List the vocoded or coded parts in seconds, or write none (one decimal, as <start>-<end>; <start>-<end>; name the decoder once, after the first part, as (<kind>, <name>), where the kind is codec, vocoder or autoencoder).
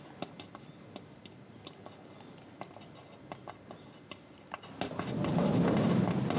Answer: none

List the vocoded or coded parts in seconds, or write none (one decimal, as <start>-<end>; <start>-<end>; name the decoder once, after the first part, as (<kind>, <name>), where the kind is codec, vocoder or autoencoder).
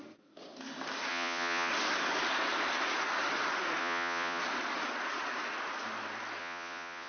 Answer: 1.1-1.7 (vocoder, Vocos); 3.8-4.4; 6.4-7.1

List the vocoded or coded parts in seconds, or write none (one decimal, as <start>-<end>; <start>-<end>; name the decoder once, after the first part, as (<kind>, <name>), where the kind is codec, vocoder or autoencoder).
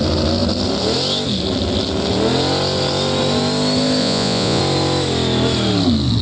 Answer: 4.0-4.6 (vocoder, Vocos)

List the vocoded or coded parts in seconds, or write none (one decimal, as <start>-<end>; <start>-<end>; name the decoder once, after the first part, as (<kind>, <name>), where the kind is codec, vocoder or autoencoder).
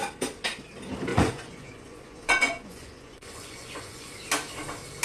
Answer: 1.1-4.1 (vocoder, Vocos)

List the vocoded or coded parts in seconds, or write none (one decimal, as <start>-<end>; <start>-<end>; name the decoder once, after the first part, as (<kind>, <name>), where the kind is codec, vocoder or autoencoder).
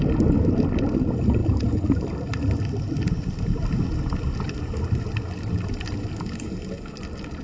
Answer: none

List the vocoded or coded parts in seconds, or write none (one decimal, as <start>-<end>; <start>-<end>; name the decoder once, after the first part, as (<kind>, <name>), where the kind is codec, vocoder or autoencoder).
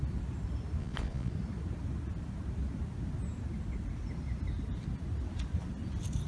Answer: 0.8-1.3 (vocoder, Vocos)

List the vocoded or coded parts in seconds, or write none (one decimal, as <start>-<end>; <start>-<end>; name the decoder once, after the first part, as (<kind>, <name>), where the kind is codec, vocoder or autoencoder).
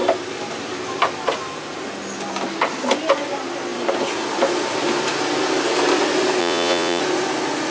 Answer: 6.4-7.0 (vocoder, Vocos)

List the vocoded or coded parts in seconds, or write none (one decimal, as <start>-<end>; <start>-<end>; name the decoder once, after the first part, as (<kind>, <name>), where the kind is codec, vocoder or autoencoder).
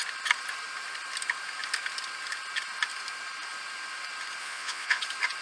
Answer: 4.4-5.0 (vocoder, Vocos)